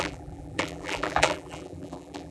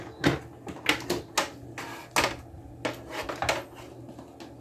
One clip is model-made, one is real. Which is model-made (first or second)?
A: first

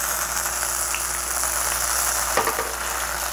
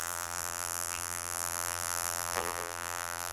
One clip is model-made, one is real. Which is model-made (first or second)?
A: second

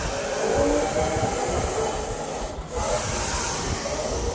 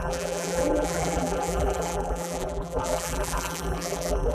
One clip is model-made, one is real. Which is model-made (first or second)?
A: second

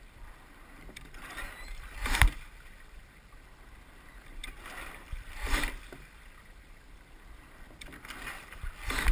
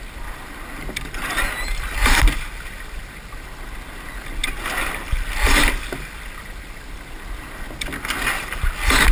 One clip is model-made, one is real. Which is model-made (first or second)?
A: first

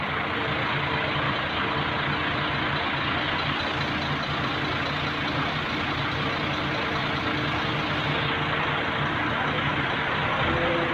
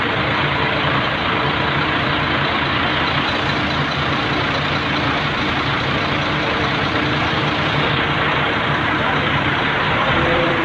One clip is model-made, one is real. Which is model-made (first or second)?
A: second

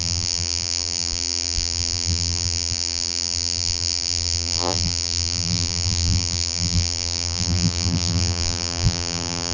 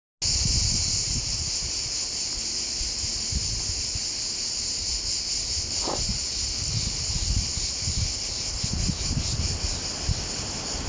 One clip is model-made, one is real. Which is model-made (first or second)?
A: first